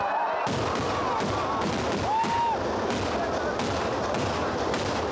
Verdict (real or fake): real